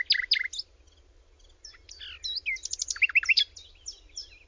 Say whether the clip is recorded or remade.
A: recorded